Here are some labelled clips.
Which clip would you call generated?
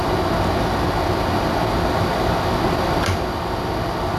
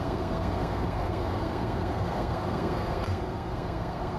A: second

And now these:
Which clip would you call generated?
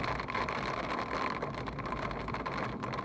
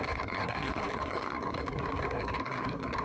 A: second